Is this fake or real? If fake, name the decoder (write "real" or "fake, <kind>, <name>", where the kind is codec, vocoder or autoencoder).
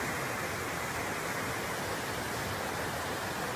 real